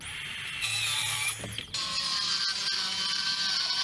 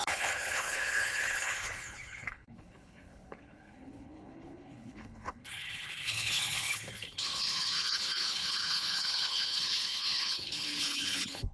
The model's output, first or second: second